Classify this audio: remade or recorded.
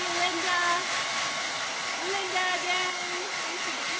recorded